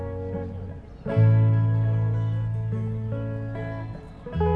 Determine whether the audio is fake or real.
real